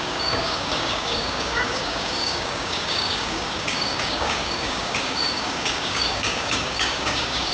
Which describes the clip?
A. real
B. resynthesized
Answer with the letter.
B